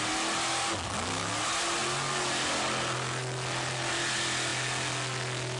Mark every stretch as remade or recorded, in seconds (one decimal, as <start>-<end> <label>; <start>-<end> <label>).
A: 0.0-5.6 recorded